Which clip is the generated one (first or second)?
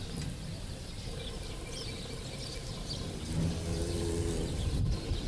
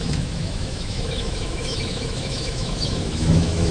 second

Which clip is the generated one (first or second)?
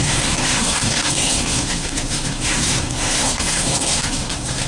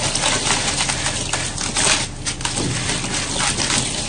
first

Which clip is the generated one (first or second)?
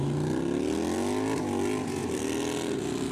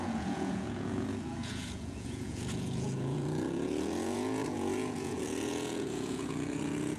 second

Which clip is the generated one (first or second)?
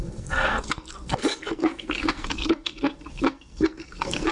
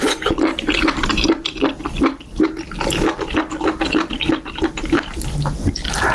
first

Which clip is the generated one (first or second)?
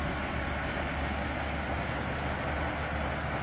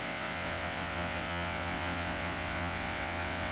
second